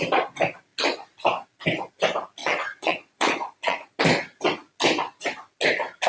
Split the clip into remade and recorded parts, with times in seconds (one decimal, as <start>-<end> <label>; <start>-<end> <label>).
0.0-2.4 recorded; 2.4-4.0 remade; 4.0-6.1 recorded